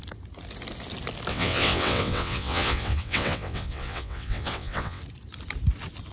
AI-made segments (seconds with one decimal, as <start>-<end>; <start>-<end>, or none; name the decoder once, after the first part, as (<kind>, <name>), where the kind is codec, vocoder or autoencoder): 1.3-5.0 (vocoder, WaveNeXt)